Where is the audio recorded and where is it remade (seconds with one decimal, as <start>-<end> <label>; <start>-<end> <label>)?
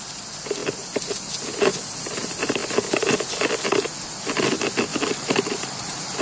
0.0-4.9 recorded; 4.9-6.2 remade